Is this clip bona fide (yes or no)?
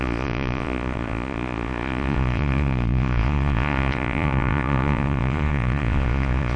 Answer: no